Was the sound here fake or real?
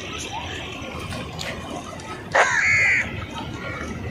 real